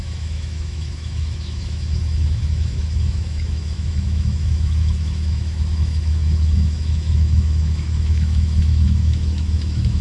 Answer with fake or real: fake